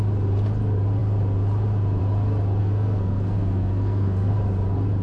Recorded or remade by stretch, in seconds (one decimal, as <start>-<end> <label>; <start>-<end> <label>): 0.0-2.6 recorded; 2.6-4.3 remade; 4.3-5.0 recorded